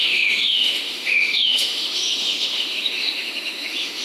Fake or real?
fake